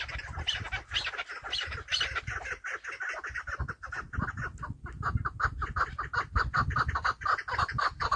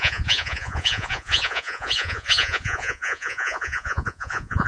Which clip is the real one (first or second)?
first